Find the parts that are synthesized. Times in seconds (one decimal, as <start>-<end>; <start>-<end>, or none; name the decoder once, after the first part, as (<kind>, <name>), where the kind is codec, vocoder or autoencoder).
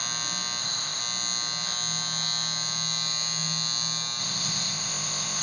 0.6-1.0 (codec, ZipCodec); 4.2-5.4